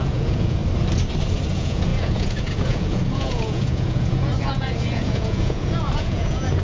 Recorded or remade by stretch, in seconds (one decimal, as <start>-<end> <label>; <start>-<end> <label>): 0.0-0.6 remade; 0.6-1.5 recorded; 1.5-6.6 remade